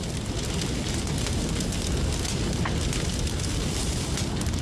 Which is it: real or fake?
real